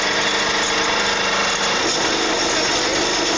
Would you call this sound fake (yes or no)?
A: no